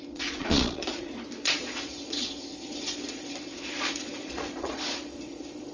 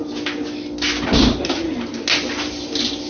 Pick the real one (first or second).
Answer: second